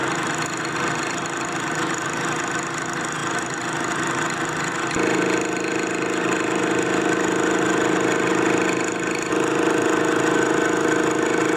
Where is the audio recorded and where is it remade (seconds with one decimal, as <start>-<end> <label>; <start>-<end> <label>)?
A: 0.0-11.6 recorded